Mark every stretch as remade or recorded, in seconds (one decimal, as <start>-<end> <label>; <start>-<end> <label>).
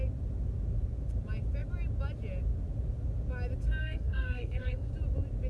0.0-3.8 recorded; 3.8-4.9 remade; 4.9-5.5 recorded